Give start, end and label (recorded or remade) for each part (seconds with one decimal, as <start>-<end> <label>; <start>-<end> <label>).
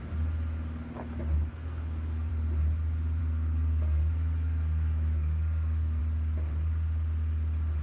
0.0-1.5 recorded; 1.5-2.3 remade; 2.3-3.2 recorded; 3.2-6.0 remade; 6.0-7.8 recorded